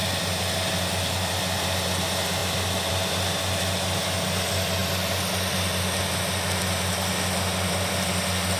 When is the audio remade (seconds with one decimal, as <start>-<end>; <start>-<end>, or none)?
none